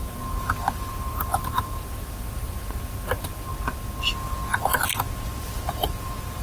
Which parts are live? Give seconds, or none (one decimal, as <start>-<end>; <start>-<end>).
3.5-5.4